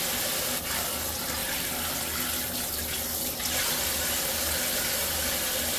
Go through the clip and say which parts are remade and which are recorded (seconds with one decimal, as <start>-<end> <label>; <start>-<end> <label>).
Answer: 0.0-1.4 remade; 1.4-4.9 recorded; 4.9-5.8 remade